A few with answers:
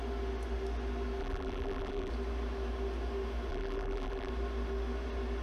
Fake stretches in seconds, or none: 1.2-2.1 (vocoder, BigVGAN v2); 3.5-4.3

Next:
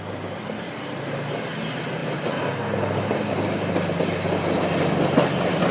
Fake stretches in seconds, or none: none